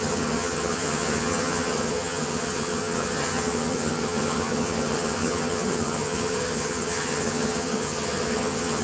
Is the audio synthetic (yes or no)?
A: yes